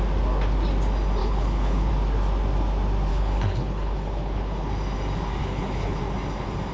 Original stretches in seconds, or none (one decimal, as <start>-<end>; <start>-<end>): 0.0-1.2; 1.9-3.1; 4.7-5.4; 6.0-6.7